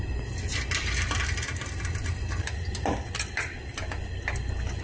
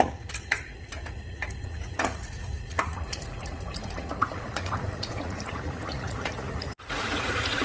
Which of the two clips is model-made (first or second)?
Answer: second